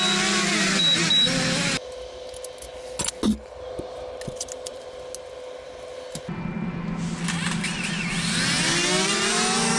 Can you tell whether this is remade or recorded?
recorded